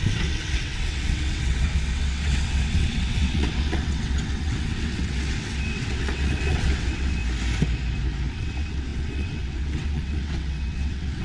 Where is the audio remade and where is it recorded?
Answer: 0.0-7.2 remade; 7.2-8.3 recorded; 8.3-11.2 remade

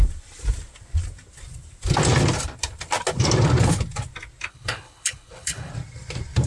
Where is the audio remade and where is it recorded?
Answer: 0.0-4.5 recorded; 4.5-5.7 remade; 5.7-6.5 recorded